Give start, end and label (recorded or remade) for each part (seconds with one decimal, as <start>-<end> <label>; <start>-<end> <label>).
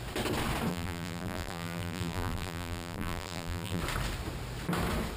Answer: 0.0-0.7 recorded; 0.7-3.8 remade; 3.8-5.2 recorded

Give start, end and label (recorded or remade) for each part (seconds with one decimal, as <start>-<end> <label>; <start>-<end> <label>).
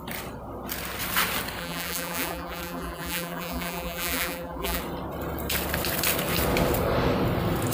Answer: 0.0-1.6 recorded; 1.6-4.8 remade; 4.8-7.7 recorded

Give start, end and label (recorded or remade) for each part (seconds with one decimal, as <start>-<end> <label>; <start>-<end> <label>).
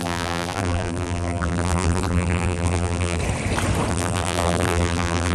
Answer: 0.0-3.2 remade; 3.2-3.9 recorded; 3.9-5.3 remade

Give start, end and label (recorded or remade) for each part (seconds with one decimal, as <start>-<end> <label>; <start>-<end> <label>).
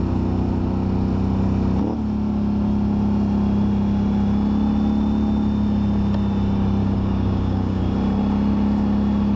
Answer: 0.0-6.8 recorded; 6.8-7.8 remade; 7.8-9.4 recorded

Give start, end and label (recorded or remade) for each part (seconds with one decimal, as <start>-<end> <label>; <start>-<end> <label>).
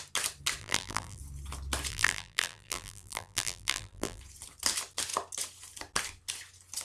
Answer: 0.0-0.6 recorded; 0.6-1.2 remade; 1.2-1.9 recorded; 1.9-4.2 remade; 4.2-6.8 recorded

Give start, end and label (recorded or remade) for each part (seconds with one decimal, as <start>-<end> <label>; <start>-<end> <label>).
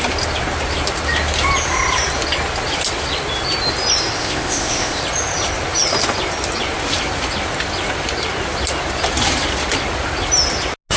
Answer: 0.0-4.2 recorded; 4.2-5.0 remade; 5.0-11.0 recorded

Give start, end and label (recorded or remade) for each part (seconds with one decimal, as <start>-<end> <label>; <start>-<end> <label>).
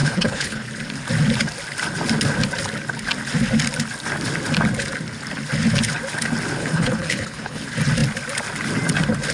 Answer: 0.0-0.7 remade; 0.7-6.6 recorded; 6.6-7.6 remade; 7.6-9.3 recorded